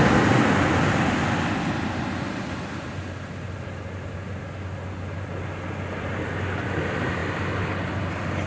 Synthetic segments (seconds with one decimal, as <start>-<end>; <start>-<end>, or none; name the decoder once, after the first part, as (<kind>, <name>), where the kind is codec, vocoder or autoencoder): none